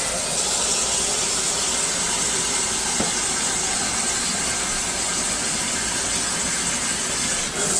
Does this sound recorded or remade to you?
recorded